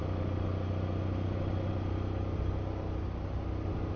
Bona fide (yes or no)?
yes